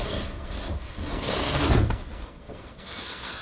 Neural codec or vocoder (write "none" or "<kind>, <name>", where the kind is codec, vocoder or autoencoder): codec, SNAC